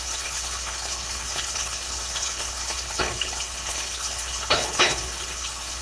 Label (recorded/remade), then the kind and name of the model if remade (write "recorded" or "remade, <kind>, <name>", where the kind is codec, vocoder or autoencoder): remade, codec, HILCodec